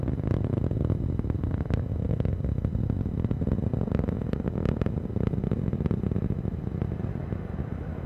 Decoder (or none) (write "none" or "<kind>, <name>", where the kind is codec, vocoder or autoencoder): none